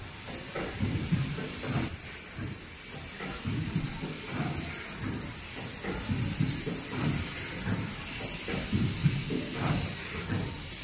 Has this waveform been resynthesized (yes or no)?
no